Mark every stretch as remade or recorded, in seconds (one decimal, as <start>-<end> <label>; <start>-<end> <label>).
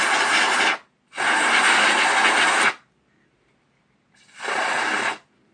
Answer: 0.0-5.5 recorded